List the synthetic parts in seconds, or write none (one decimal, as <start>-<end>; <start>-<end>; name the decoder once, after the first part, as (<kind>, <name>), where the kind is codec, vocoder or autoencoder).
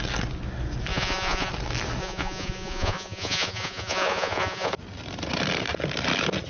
0.9-1.5 (vocoder, Vocos); 2.0-4.7